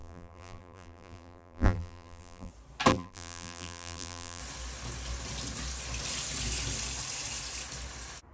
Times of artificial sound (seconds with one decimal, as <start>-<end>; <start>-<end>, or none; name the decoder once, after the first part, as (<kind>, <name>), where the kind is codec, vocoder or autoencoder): 0.0-2.5 (vocoder, BigVGAN v2); 2.9-4.4